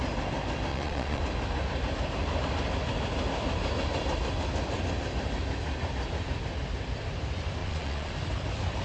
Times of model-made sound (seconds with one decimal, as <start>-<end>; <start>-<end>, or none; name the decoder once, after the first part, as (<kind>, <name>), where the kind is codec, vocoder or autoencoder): 0.7-1.2 (vocoder, Vocos); 7.6-8.1